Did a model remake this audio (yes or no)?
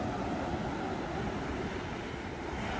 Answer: no